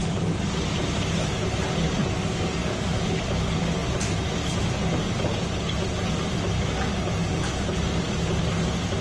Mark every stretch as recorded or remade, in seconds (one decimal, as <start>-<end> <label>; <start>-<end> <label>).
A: 0.0-2.6 recorded; 2.6-3.2 remade; 3.2-9.0 recorded